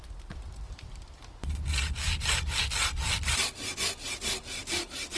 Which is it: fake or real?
real